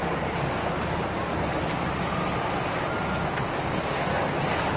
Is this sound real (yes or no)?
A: yes